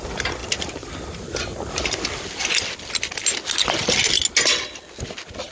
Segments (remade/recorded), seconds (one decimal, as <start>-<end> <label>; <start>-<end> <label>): 0.0-5.5 recorded

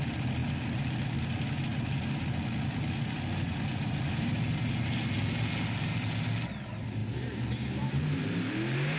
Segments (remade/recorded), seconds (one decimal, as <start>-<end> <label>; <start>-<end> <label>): 0.0-9.0 recorded